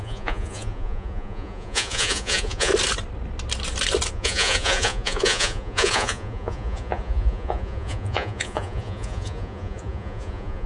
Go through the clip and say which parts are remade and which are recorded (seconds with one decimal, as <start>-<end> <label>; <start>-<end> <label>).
0.0-2.7 remade; 2.7-4.1 recorded; 4.1-10.7 remade

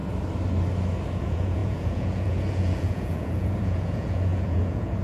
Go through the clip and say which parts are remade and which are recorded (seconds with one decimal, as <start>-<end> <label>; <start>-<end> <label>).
0.0-1.2 recorded; 1.2-5.0 remade

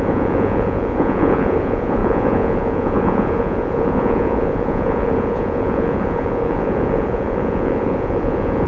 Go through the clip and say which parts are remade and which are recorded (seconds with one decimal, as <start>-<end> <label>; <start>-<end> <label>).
0.0-8.7 remade